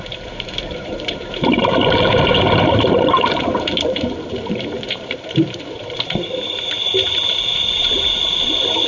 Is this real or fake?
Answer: fake